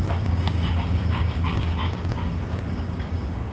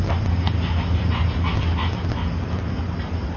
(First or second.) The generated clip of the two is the first